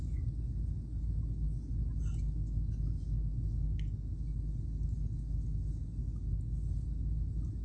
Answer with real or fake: real